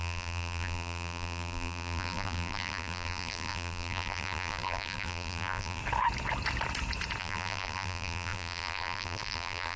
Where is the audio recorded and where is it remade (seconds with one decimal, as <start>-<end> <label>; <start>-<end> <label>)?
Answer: 0.0-5.8 remade; 5.8-7.2 recorded; 7.2-9.8 remade